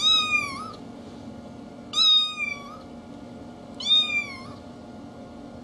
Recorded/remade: recorded